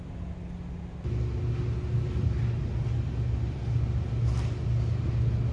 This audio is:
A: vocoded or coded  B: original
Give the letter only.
B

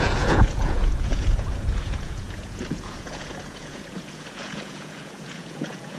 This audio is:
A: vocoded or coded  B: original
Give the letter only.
A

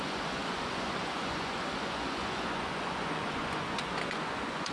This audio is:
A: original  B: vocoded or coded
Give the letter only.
B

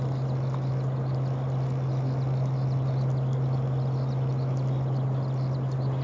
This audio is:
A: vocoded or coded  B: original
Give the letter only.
B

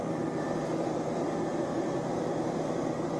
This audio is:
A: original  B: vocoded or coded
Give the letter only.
B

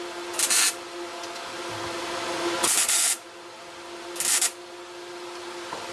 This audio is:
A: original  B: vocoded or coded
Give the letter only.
A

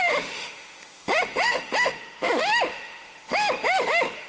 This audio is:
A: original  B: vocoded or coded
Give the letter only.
B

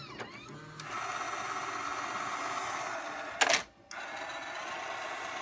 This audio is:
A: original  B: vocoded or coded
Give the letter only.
A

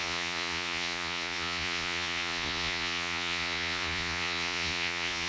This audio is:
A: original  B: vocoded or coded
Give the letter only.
B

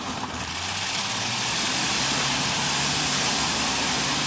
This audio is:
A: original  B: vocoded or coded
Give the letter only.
B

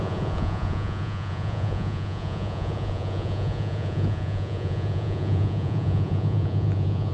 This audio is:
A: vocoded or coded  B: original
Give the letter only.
A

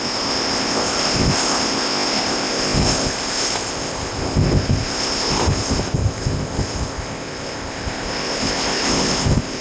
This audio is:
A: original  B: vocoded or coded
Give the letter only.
B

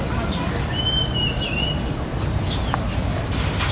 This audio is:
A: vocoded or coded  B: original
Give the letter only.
B